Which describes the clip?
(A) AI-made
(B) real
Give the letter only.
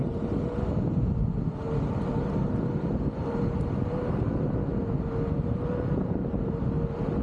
B